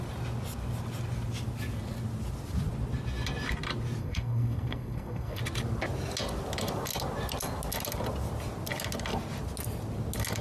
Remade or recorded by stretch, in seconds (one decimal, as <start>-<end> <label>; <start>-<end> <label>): 0.0-4.0 recorded; 4.0-5.4 remade; 5.4-10.4 recorded